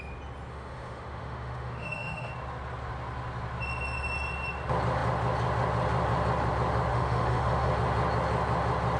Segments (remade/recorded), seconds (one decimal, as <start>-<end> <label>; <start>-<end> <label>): 0.0-0.5 recorded; 0.5-2.3 remade; 2.3-6.9 recorded; 6.9-7.7 remade; 7.7-9.0 recorded